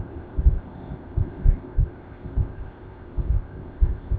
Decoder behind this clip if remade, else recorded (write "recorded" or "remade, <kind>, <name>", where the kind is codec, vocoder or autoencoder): remade, codec, ZipCodec